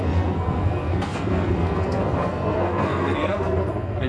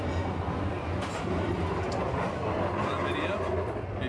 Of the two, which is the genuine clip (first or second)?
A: second